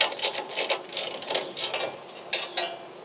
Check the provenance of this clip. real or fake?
real